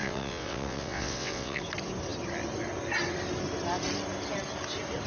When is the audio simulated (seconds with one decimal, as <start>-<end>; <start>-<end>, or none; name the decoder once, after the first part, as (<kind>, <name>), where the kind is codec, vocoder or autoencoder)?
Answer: 0.0-1.6 (vocoder, WaveNeXt)